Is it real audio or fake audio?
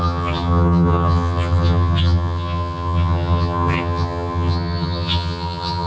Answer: fake